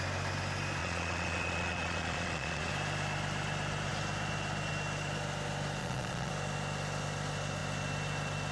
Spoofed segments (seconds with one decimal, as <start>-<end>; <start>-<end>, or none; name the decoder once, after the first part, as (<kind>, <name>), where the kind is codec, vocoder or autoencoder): 0.8-2.7 (vocoder, Vocos); 5.8-6.3